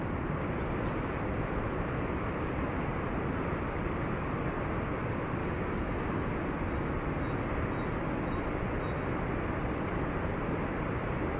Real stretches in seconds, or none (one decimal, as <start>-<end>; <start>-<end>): 0.0-5.4; 6.3-11.4